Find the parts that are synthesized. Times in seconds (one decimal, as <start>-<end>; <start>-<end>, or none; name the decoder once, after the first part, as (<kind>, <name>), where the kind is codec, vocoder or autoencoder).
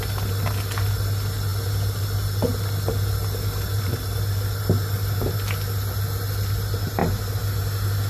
none